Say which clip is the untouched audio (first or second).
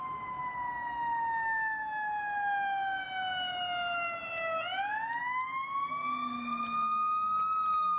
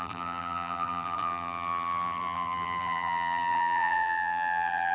first